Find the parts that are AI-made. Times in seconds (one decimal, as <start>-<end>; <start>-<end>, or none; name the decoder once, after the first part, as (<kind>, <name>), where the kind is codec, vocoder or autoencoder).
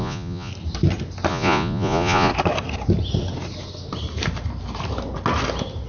0.0-0.5 (vocoder, Vocos); 1.3-2.3